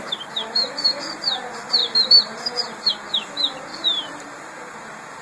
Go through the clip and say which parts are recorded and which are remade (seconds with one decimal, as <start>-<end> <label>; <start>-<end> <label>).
0.0-1.8 recorded; 1.8-2.9 remade; 2.9-3.7 recorded; 3.7-4.4 remade; 4.4-5.2 recorded